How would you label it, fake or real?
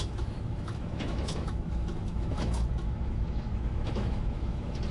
fake